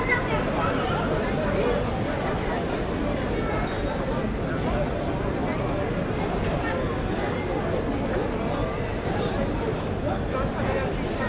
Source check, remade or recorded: recorded